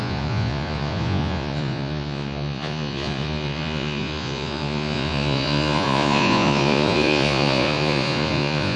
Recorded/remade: remade